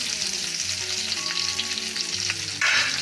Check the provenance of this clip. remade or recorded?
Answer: recorded